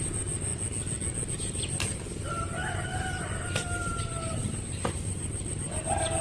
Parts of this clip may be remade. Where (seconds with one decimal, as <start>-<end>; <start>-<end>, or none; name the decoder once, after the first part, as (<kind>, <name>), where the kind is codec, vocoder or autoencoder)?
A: 0.0-0.5 (vocoder, BigVGAN v2); 1.3-2.6; 3.4-6.2